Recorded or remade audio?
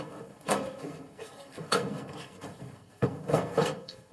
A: remade